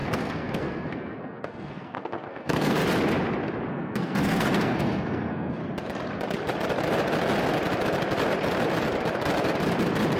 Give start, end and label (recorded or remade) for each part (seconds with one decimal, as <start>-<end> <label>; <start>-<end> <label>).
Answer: 0.0-2.8 remade; 2.8-3.7 recorded; 3.7-5.6 remade; 5.6-10.2 recorded